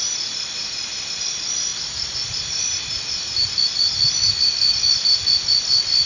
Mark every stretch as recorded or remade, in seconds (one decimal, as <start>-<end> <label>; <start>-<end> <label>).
0.0-6.1 recorded